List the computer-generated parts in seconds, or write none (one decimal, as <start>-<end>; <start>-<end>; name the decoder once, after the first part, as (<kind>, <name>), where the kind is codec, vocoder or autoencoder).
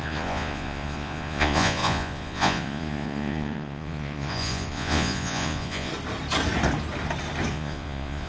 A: 0.0-5.9 (vocoder, Vocos); 7.5-8.3